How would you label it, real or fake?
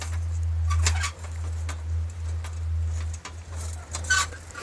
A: real